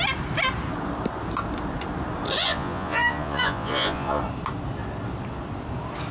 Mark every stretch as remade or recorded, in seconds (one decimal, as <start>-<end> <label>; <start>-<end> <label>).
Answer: 0.0-2.4 recorded; 2.4-4.2 remade; 4.2-6.1 recorded